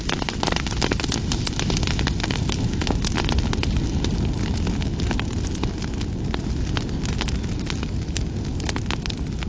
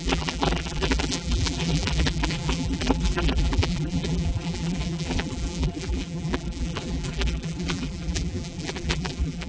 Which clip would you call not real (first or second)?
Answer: second